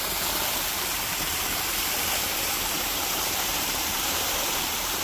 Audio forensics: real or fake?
fake